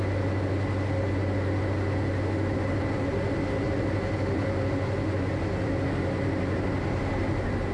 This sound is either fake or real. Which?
real